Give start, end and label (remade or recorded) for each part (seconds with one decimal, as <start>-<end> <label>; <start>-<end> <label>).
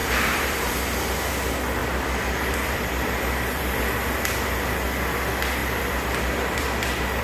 0.0-0.7 remade; 0.7-1.8 recorded; 1.8-3.8 remade; 3.8-5.6 recorded; 5.6-6.7 remade; 6.7-7.2 recorded